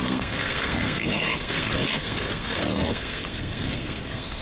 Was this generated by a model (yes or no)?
yes